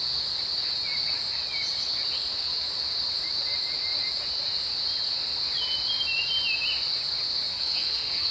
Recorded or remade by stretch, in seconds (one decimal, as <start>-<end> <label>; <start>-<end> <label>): 0.0-7.5 recorded; 7.5-8.3 remade